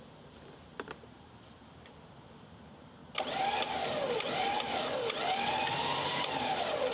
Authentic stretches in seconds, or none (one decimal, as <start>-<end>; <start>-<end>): 3.0-5.9